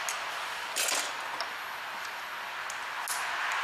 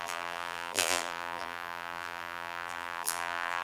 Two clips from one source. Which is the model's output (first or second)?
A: second